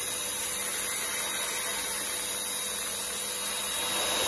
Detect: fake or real real